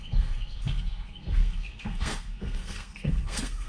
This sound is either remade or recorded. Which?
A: remade